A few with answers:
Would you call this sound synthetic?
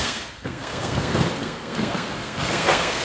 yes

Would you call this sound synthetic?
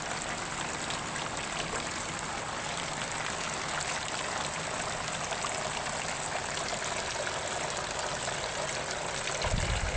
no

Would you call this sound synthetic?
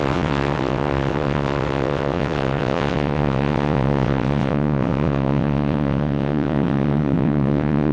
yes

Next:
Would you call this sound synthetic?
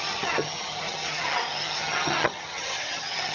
yes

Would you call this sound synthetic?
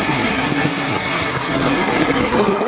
yes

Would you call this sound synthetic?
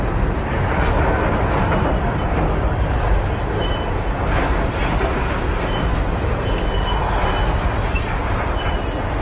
no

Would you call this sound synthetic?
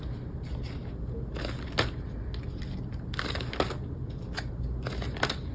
no